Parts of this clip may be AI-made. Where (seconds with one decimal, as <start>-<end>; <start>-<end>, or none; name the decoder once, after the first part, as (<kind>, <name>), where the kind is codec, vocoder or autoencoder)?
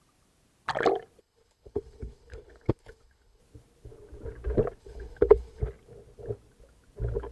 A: 1.2-3.4 (codec, HILCodec); 4.8-5.6